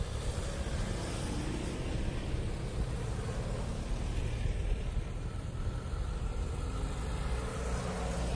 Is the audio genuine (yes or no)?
yes